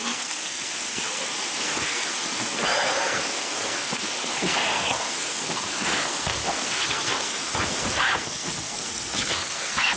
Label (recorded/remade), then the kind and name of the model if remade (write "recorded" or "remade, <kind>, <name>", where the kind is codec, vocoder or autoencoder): remade, codec, SNAC